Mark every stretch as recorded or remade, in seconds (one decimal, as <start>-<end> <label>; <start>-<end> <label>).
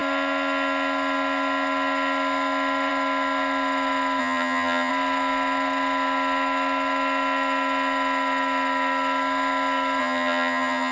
0.0-4.2 recorded; 4.2-4.9 remade; 4.9-10.0 recorded; 10.0-10.9 remade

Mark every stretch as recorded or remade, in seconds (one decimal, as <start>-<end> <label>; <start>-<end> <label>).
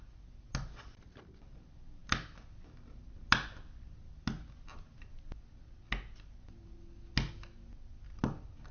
0.0-8.7 recorded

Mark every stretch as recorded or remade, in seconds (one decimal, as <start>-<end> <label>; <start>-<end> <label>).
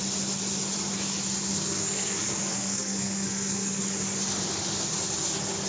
0.0-1.5 recorded; 1.5-3.8 remade; 3.8-5.7 recorded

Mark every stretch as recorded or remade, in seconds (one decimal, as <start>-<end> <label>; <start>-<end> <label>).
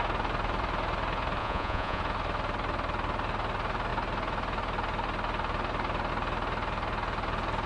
0.0-1.4 recorded; 1.4-2.0 remade; 2.0-7.7 recorded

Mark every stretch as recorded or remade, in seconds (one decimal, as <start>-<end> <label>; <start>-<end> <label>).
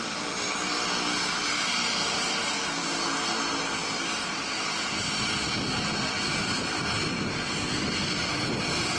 0.0-9.0 recorded